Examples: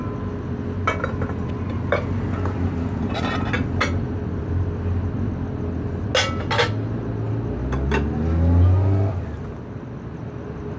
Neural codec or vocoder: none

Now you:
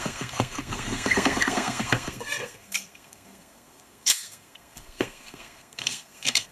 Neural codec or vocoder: codec, SNAC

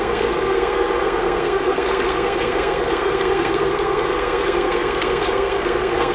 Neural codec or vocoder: codec, SNAC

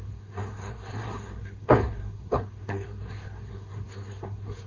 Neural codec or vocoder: codec, SNAC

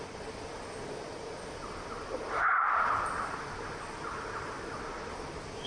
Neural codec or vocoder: none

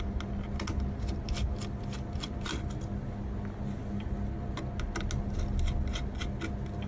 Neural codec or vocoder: none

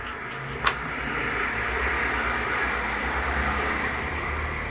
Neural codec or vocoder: none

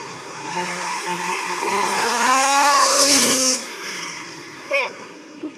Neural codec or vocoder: codec, SNAC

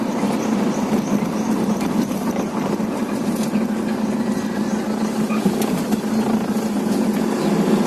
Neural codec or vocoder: none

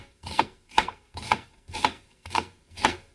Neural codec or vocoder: codec, SNAC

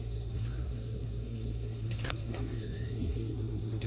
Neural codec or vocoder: codec, SNAC